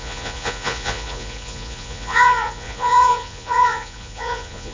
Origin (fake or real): fake